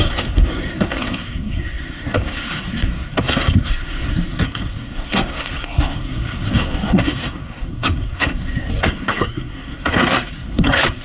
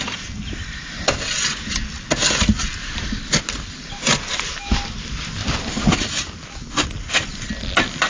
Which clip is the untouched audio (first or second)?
second